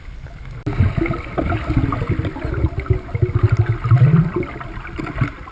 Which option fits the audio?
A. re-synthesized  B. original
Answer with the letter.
B